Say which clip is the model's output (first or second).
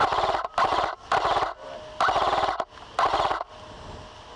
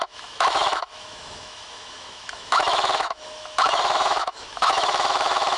second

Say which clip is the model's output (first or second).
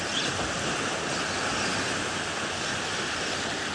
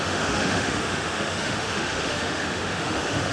second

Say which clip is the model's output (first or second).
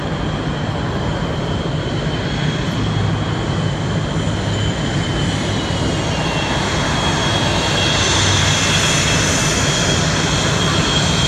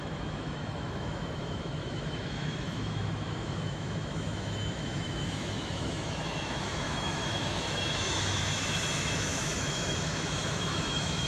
second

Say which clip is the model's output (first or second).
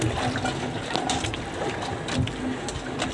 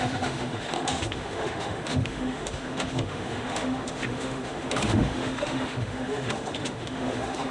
second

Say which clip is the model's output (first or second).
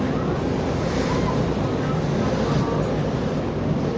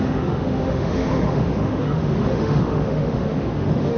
second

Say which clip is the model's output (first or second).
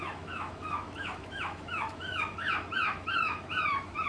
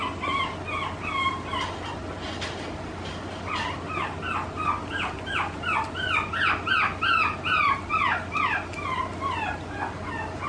first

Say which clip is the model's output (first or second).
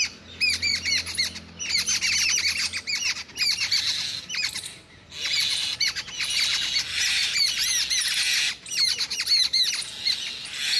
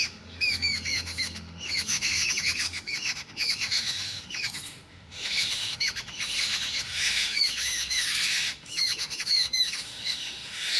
second